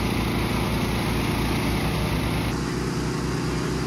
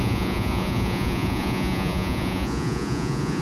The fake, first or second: second